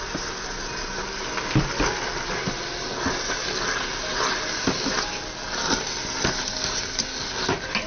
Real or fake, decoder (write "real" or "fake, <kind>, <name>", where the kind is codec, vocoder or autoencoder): real